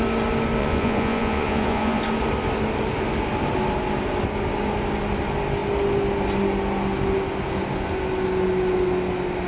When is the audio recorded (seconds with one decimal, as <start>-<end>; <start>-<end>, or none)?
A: 0.0-0.6; 2.0-9.5